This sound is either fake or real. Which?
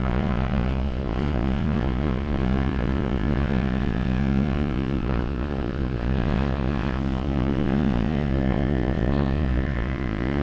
fake